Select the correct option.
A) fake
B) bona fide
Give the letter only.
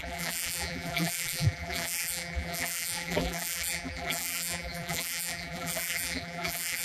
A